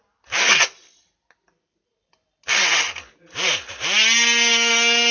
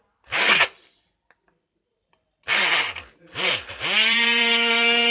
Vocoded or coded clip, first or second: second